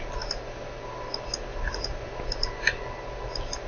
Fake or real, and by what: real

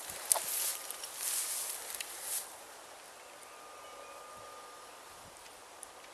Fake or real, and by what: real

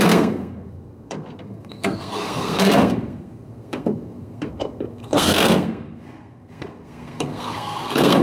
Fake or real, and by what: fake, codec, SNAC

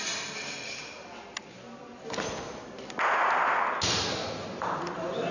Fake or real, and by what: real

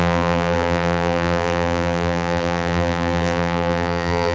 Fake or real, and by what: fake, vocoder, BigVGAN v2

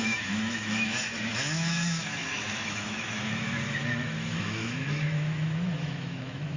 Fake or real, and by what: fake, autoencoder, DAC-VAE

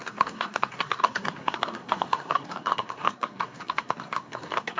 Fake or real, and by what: fake, codec, SNAC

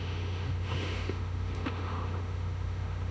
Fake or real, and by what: fake, autoencoder, DAC-VAE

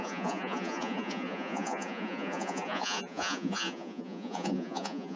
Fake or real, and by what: fake, vocoder, Vocos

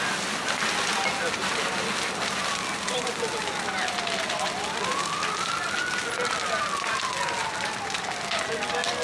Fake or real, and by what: real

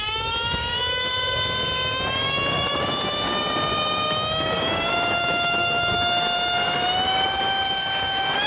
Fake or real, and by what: fake, codec, DAC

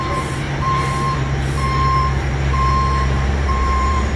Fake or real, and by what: fake, vocoder, BigVGAN v2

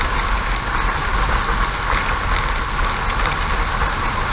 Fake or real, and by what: real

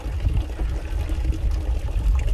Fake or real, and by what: real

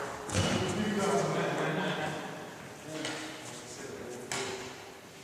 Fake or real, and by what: real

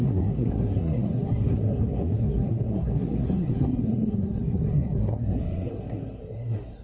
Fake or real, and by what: fake, codec, SNAC